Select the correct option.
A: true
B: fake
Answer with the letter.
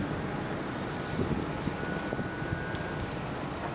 A